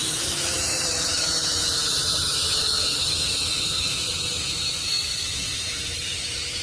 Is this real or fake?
fake